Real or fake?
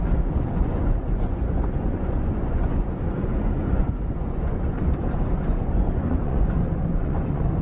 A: fake